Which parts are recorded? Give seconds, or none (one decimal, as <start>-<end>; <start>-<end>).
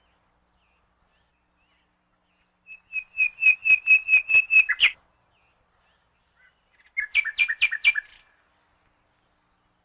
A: 0.0-9.8